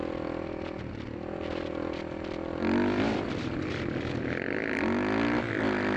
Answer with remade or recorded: recorded